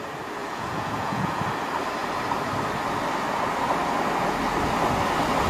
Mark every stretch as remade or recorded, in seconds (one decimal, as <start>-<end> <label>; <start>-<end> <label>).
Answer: 0.0-0.4 recorded; 0.4-1.4 remade; 1.4-5.5 recorded